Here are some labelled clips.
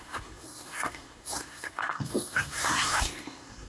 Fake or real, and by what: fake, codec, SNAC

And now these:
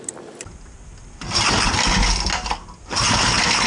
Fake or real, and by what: real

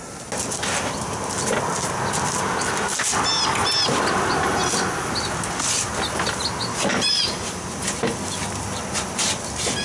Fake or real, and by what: real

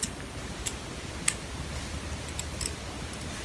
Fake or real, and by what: real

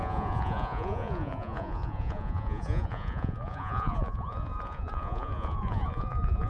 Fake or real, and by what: fake, vocoder, Vocos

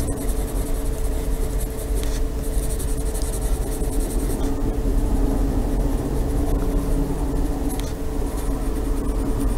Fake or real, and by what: real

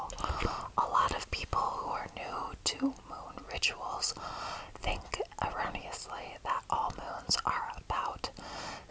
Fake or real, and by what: real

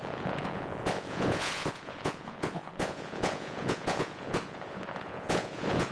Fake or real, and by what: fake, vocoder, Vocos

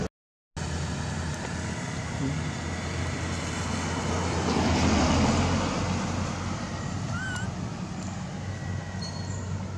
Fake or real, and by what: real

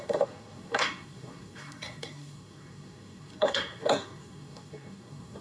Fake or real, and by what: fake, codec, SNAC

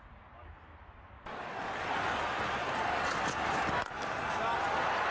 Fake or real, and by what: real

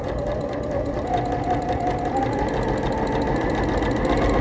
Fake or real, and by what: real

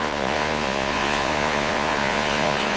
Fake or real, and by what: fake, vocoder, Vocos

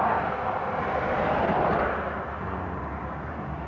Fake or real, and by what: fake, vocoder, BigVGAN v2